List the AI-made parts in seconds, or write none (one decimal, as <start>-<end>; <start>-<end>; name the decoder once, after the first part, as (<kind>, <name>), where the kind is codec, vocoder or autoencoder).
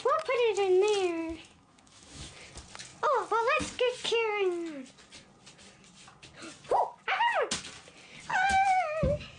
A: 1.2-2.3 (autoencoder, DAC-VAE)